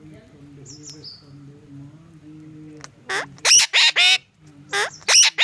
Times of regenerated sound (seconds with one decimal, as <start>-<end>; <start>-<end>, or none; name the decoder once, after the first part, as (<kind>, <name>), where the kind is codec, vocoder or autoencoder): none